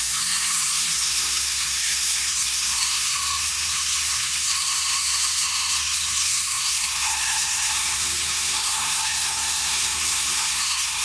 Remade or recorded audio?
remade